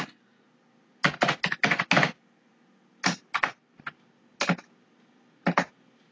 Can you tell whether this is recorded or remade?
recorded